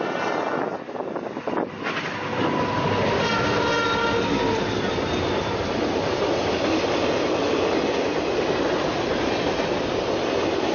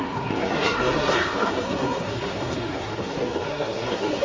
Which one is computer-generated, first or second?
second